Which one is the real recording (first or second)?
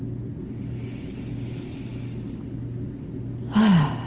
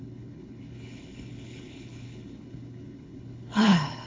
first